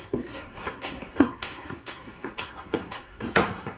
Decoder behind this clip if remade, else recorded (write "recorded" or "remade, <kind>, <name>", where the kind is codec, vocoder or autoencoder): remade, codec, SNAC